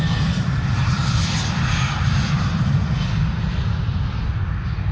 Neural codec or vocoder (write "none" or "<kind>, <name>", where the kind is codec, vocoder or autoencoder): none